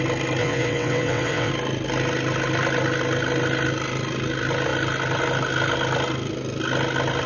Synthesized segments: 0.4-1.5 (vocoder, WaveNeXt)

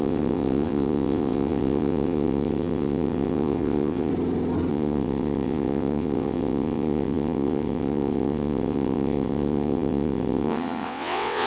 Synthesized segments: 0.0-4.1 (vocoder, WaveNeXt); 4.7-11.5